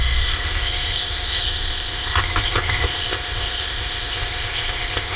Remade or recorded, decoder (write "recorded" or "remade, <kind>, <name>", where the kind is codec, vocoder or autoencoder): remade, codec, ZipCodec